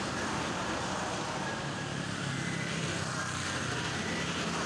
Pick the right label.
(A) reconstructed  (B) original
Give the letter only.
B